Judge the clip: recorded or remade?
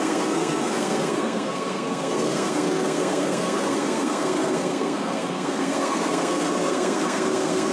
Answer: remade